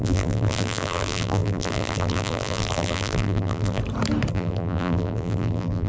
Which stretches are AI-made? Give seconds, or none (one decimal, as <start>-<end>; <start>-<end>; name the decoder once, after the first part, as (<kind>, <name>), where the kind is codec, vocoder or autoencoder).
0.0-3.8 (vocoder, BigVGAN v2); 4.3-5.9